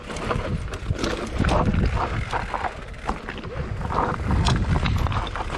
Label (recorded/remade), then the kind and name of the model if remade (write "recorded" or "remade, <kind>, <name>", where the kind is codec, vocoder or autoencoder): recorded